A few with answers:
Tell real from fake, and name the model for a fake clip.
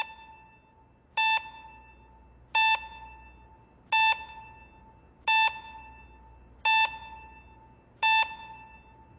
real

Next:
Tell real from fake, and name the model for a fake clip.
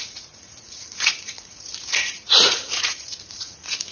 fake, vocoder, Vocos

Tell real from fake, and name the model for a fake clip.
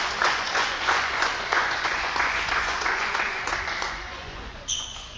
fake, vocoder, Vocos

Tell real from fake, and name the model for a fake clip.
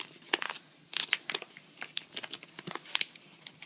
real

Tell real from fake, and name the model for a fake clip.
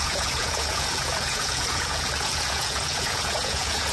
fake, vocoder, Vocos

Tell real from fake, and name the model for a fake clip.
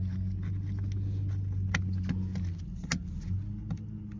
real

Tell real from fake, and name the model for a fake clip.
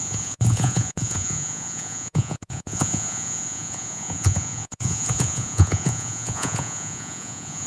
fake, vocoder, Vocos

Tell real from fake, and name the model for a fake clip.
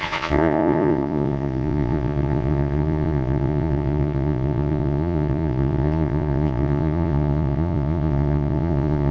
fake, vocoder, Vocos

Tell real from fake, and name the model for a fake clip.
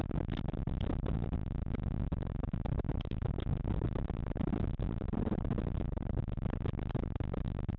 real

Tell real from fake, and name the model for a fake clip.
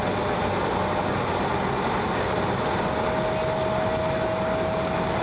real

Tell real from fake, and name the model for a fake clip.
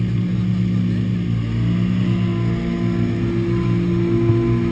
real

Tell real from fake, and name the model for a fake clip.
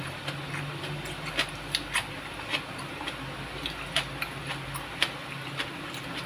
real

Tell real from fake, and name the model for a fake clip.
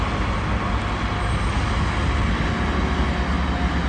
real